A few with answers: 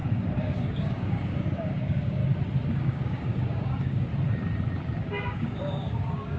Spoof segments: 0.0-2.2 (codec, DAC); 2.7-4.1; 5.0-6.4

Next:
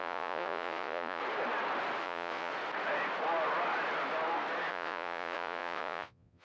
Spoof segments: 0.0-1.2 (vocoder, Vocos); 2.0-2.5; 4.7-6.4

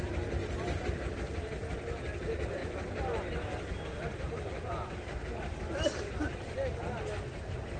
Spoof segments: none

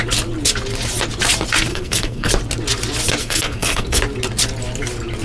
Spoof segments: 1.7-2.3 (codec, SNAC); 3.2-4.0

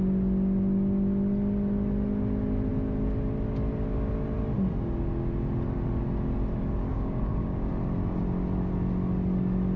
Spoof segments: 6.9-7.7 (codec, DAC)

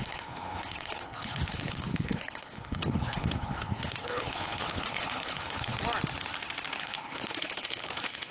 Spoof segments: 0.0-5.7 (codec, HILCodec); 6.8-8.3

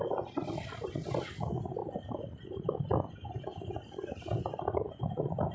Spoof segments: none